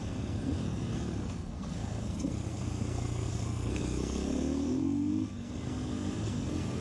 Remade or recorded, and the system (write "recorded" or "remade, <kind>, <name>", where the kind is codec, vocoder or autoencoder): remade, codec, SNAC